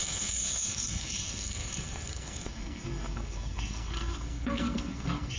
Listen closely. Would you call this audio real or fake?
fake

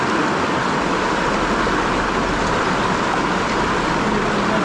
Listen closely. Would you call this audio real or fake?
real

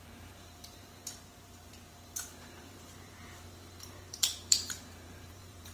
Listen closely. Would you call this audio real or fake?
fake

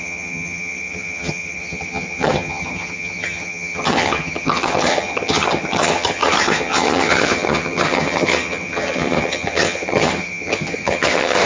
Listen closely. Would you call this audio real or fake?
fake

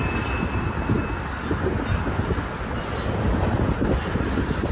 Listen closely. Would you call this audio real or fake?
real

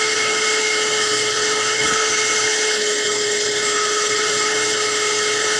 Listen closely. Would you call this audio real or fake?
fake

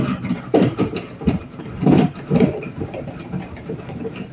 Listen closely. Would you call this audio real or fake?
fake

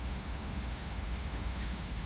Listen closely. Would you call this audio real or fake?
fake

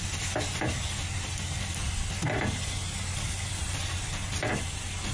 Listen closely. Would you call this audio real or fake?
real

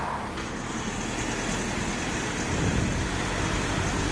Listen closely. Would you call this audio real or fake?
real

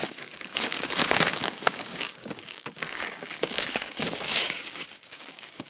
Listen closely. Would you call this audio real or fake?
fake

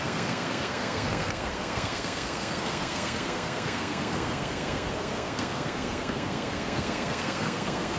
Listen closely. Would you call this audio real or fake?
fake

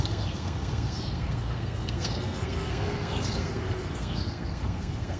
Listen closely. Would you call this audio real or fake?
fake